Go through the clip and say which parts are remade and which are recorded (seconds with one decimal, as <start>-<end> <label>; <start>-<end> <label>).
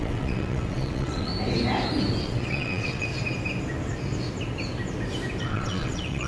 0.0-1.3 remade; 1.3-2.2 recorded; 2.2-3.1 remade; 3.1-5.4 recorded; 5.4-6.3 remade